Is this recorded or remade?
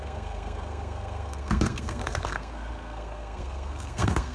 remade